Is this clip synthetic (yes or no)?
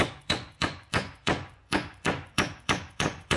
yes